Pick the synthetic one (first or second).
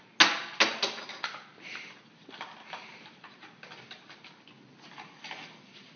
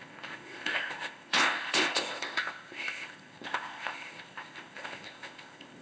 second